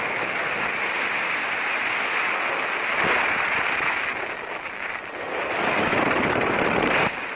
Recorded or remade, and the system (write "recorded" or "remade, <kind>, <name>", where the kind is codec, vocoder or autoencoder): recorded